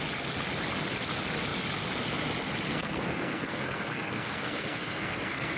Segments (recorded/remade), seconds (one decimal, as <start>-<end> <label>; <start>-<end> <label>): 0.0-2.7 recorded; 2.7-5.6 remade